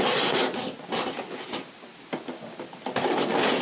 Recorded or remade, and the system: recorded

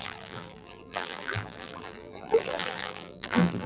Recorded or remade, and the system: remade, vocoder, BigVGAN v2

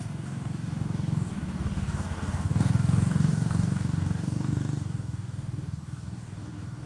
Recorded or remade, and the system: remade, codec, DAC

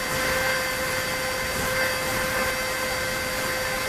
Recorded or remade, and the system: recorded